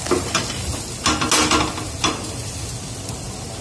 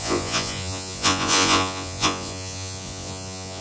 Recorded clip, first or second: first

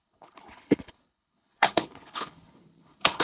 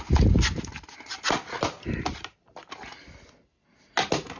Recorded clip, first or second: second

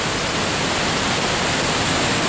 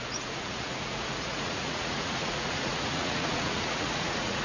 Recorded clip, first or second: first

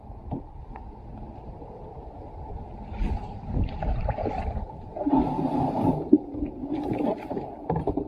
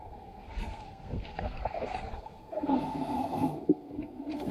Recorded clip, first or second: first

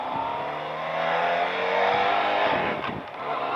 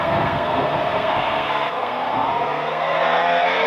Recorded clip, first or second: first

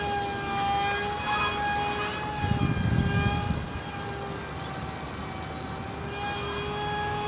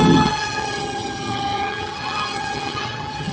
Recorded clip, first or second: first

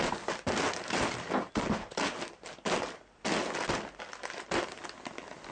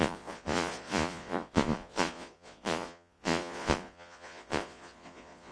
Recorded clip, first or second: first